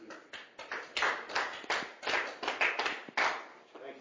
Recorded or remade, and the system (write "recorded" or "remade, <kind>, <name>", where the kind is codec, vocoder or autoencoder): recorded